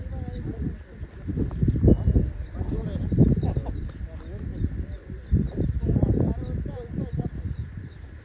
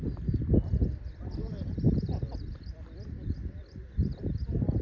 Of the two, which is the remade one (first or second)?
second